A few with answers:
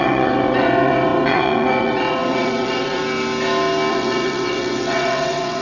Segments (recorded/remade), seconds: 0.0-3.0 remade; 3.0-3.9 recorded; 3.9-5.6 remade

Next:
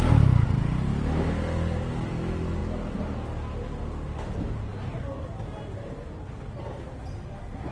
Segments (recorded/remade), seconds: 0.0-7.7 recorded

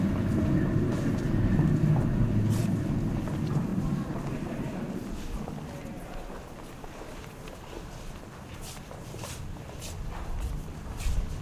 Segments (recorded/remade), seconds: 0.0-3.7 recorded; 3.7-4.5 remade; 4.5-11.4 recorded

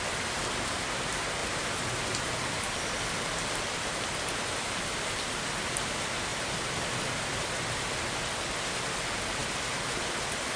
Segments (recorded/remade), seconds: 0.0-10.6 recorded

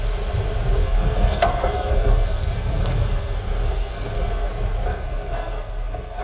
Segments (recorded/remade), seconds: 0.0-0.8 recorded; 0.8-4.5 remade; 4.5-4.9 recorded; 4.9-6.2 remade

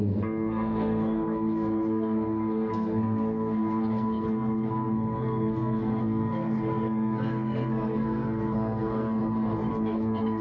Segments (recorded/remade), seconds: 0.0-9.2 remade; 9.2-9.7 recorded; 9.7-10.4 remade

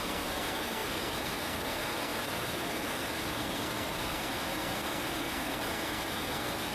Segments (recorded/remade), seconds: 0.0-6.7 remade

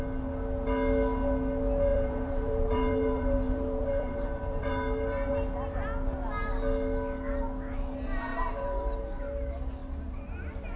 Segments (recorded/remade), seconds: 0.0-1.9 recorded; 1.9-5.3 remade; 5.3-8.3 recorded; 8.3-9.2 remade; 9.2-9.8 recorded; 9.8-10.8 remade